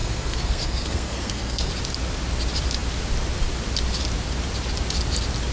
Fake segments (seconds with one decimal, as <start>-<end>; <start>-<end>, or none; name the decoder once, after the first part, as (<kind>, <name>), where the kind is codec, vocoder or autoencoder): 0.0-1.7 (codec, SNAC)

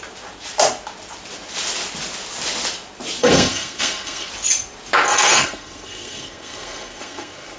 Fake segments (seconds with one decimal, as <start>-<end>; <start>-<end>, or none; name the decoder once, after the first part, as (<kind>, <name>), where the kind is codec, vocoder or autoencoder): 3.2-4.3 (codec, SNAC); 5.1-7.6

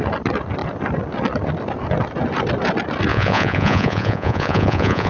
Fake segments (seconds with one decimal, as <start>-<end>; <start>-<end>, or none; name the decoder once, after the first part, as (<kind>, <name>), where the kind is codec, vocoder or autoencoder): 3.1-5.1 (vocoder, Vocos)

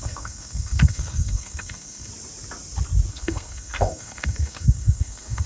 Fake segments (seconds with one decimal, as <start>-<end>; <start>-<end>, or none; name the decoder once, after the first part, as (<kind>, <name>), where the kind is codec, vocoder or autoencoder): 0.0-2.1 (codec, SNAC); 3.1-5.5

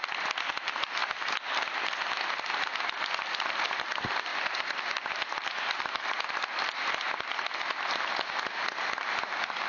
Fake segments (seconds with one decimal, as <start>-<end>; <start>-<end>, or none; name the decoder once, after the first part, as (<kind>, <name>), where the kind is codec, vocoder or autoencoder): 0.0-4.3 (vocoder, BigVGAN v2); 8.6-9.7

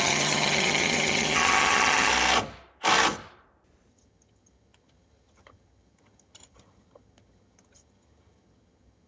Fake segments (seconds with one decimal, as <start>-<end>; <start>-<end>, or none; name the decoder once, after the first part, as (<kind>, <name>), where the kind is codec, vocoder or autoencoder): 0.0-2.1 (vocoder, HiFi-GAN); 3.9-9.1

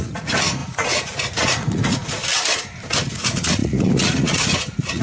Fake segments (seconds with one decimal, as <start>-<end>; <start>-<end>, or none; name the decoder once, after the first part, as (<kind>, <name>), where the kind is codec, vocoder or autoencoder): 0.0-2.2 (vocoder, Vocos); 2.9-5.0